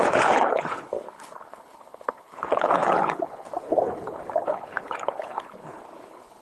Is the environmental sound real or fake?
fake